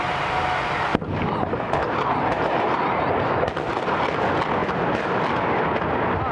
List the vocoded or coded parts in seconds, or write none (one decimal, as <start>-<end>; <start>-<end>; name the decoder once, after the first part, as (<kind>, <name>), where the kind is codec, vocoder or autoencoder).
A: 0.9-3.7 (vocoder, BigVGAN v2); 4.6-5.1